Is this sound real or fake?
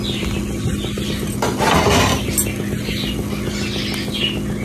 real